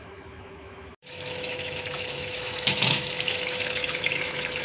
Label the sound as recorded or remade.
remade